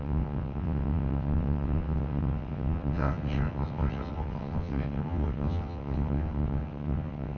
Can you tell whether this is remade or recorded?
remade